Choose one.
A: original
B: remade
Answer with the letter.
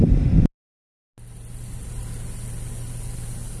A